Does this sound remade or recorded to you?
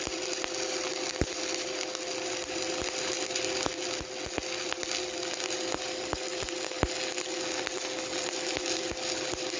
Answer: recorded